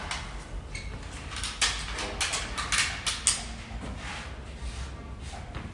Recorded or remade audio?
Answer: recorded